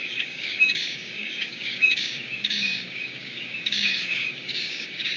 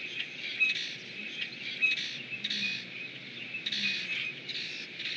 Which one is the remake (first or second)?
first